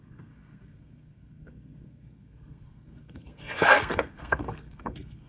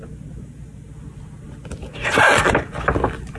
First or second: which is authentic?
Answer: second